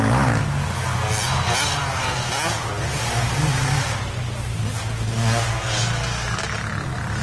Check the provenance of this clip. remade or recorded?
recorded